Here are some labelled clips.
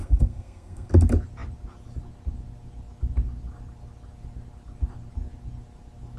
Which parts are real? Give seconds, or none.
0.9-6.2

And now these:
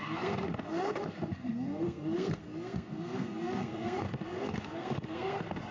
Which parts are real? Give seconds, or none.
none